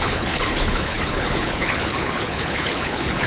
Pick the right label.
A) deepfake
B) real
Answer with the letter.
A